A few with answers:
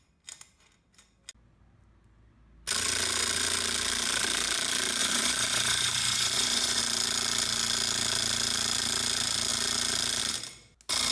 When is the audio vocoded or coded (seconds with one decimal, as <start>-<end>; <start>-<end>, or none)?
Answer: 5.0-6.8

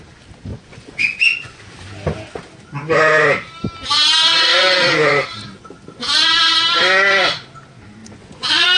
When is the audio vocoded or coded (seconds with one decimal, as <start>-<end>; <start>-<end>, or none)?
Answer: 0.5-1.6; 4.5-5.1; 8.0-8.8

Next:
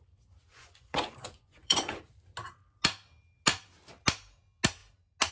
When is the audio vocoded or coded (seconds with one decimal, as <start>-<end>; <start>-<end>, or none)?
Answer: 0.5-2.0